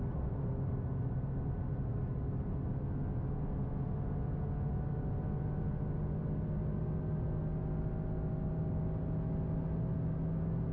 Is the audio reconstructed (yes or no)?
no